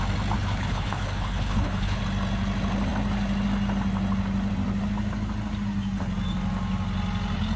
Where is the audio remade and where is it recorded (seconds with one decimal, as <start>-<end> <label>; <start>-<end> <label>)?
0.0-0.4 recorded; 0.4-2.0 remade; 2.0-7.6 recorded